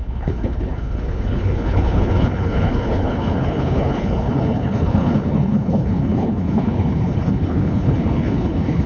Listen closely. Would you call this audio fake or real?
fake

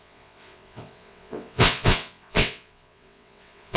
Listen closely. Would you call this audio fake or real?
fake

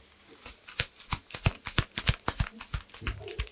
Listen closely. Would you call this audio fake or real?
real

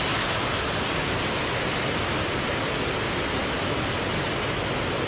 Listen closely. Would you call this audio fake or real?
real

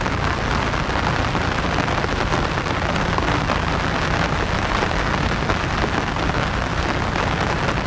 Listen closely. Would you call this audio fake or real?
real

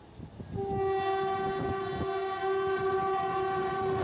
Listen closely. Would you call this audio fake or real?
real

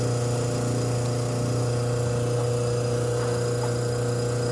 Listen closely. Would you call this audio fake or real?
real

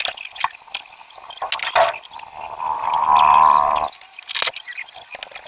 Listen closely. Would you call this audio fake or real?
real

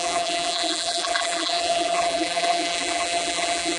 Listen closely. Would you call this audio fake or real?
fake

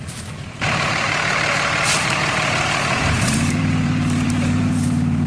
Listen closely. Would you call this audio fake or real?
fake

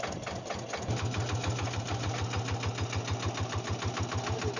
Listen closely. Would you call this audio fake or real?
real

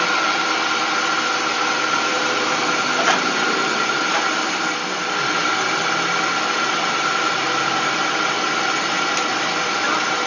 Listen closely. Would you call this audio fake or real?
real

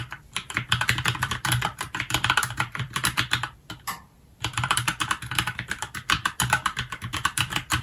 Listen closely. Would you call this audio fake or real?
fake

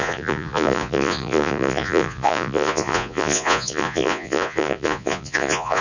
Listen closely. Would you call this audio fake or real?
fake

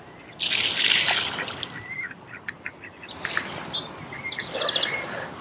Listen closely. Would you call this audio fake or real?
real